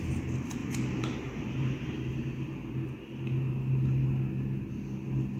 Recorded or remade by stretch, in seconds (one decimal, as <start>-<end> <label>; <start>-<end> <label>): 0.0-0.6 recorded; 0.6-2.0 remade; 2.0-5.4 recorded

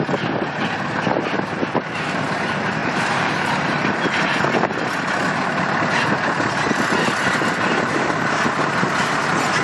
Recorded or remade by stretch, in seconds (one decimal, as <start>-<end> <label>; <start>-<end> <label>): 0.0-2.8 recorded; 2.8-4.4 remade; 4.4-9.6 recorded

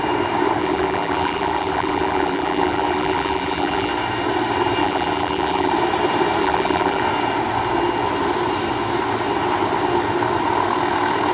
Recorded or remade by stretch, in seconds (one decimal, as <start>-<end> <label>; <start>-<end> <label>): 0.0-0.6 recorded; 0.6-3.9 remade; 3.9-4.8 recorded; 4.8-5.7 remade; 5.7-6.4 recorded; 6.4-7.0 remade; 7.0-11.3 recorded

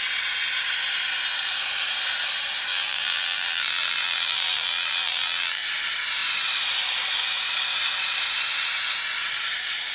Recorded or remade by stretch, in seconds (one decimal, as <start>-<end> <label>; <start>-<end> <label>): 0.0-2.7 recorded; 2.7-5.6 remade; 5.6-9.9 recorded

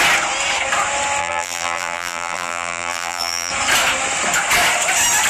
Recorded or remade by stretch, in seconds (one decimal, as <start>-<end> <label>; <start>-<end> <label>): 0.0-1.2 recorded; 1.2-3.5 remade; 3.5-5.3 recorded

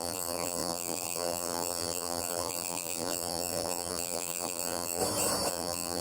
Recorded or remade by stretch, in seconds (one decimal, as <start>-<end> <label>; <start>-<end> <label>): 0.0-5.0 remade; 5.0-5.5 recorded; 5.5-6.0 remade